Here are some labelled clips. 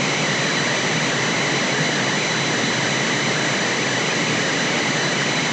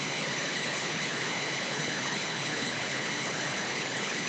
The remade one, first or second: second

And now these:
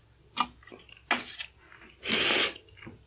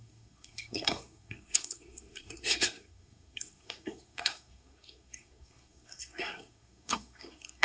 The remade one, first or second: second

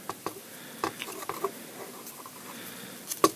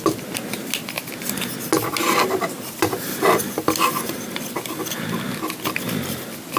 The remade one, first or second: first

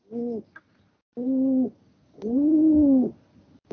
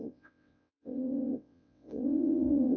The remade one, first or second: second